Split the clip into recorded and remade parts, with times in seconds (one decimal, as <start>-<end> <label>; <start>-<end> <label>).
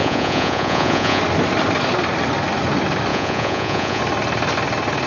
0.0-1.2 remade; 1.2-3.1 recorded; 3.1-4.0 remade; 4.0-5.1 recorded